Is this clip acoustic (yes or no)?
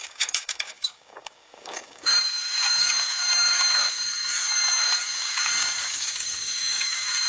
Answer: no